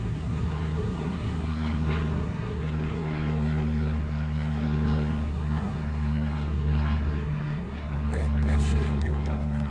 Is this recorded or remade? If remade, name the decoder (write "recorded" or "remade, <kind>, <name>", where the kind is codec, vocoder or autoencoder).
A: remade, codec, SNAC